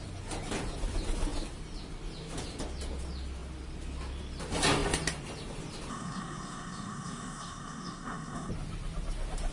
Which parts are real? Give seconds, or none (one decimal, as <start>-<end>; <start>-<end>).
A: 0.0-5.9; 8.5-9.5